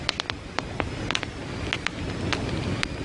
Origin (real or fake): real